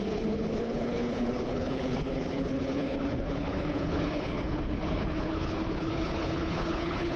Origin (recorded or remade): remade